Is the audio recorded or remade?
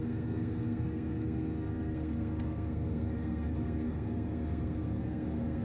remade